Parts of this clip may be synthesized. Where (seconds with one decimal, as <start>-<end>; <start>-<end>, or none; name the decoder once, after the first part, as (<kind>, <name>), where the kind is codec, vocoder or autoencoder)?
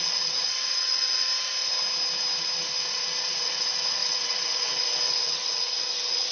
0.0-1.3 (vocoder, WaveNeXt); 3.3-6.3